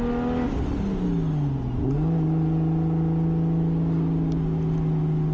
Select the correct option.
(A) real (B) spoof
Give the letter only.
A